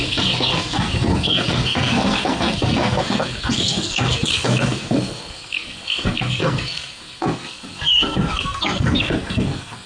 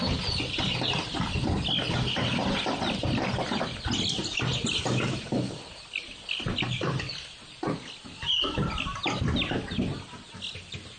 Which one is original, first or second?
second